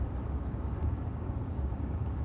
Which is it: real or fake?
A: fake